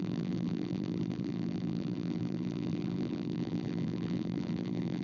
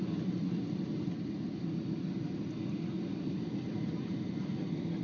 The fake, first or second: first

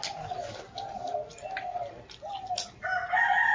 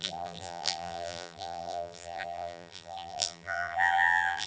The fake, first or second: second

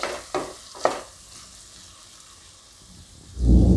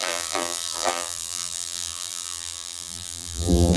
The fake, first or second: second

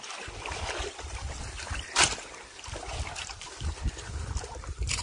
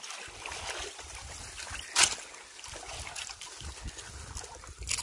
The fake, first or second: first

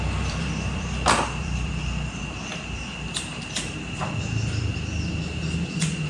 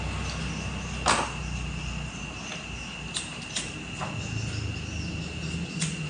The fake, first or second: first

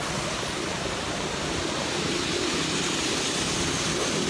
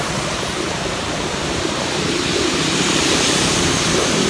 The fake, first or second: second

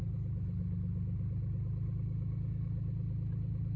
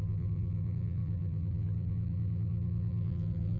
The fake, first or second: second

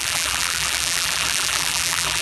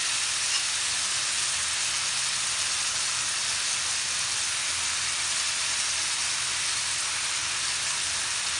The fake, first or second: first